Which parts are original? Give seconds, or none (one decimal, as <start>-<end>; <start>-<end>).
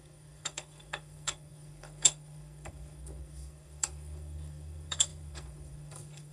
none